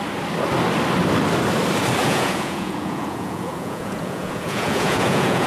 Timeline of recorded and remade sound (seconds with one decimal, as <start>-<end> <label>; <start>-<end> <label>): 0.0-2.0 recorded; 2.0-5.5 remade